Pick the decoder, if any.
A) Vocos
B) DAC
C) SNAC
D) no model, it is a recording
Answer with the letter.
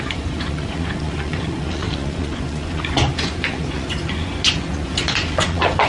A